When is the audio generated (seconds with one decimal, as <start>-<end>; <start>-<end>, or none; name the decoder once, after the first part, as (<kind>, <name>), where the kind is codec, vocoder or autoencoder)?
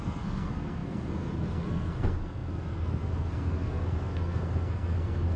0.0-5.4 (codec, SNAC)